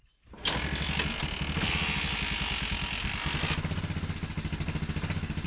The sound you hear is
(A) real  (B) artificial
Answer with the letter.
A